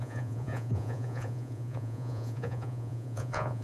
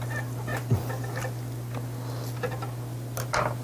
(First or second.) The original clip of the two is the second